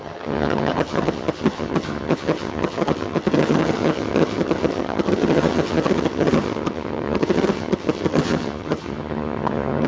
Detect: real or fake fake